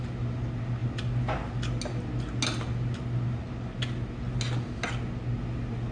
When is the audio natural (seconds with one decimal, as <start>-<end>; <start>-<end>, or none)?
0.0-5.9